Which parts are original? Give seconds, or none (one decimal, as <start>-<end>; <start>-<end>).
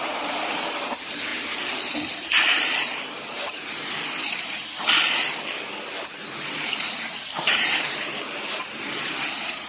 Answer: 4.6-6.4